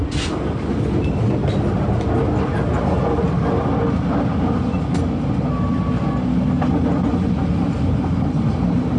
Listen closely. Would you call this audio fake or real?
real